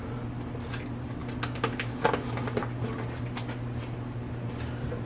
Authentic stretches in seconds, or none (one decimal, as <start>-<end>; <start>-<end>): 0.0-5.1